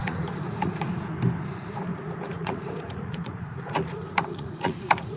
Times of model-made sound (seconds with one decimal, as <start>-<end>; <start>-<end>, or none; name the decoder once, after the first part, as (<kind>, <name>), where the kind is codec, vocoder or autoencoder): 0.0-0.9 (vocoder, Vocos); 1.9-5.2